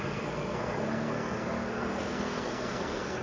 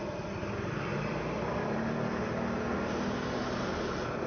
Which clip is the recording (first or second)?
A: second